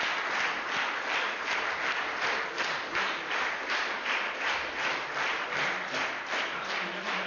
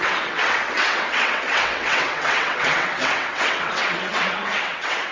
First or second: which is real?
first